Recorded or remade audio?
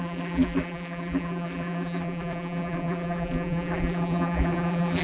remade